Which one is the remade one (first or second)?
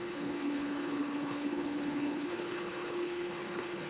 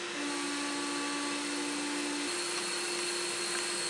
first